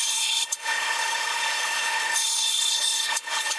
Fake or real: fake